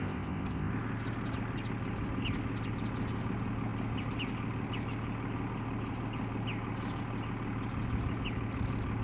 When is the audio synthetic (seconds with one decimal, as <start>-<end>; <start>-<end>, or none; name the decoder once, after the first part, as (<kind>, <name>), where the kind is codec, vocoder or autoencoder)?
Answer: 0.0-0.7 (codec, ZipCodec)